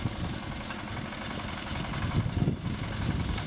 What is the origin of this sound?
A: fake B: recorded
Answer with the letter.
B